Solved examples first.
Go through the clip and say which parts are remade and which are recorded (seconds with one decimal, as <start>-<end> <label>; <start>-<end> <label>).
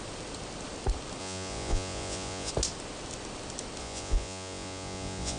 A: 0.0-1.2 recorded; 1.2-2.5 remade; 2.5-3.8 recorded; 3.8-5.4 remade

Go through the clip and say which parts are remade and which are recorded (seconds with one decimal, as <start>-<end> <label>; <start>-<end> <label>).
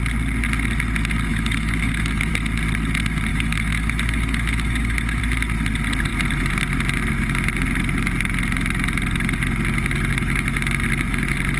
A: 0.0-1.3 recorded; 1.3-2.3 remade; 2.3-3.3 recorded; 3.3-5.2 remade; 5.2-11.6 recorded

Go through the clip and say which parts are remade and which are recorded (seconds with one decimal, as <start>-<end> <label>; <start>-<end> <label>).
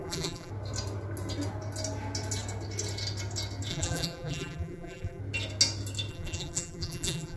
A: 0.0-0.5 remade; 0.5-3.7 recorded; 3.7-5.2 remade; 5.2-6.1 recorded; 6.1-7.4 remade